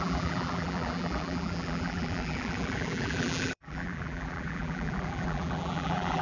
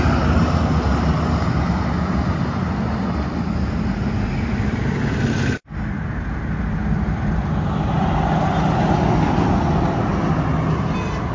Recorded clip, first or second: second